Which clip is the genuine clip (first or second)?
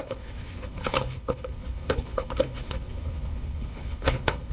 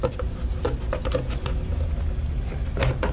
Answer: second